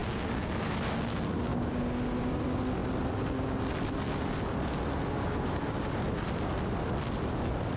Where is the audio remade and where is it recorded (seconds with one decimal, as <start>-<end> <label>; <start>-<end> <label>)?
0.0-0.7 remade; 0.7-1.5 recorded; 1.5-2.2 remade; 2.2-7.8 recorded